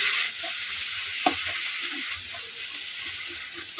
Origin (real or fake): real